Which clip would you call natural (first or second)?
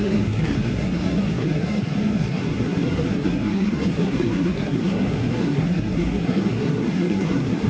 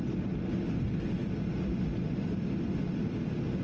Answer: second